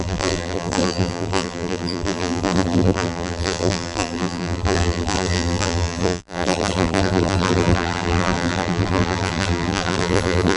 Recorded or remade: remade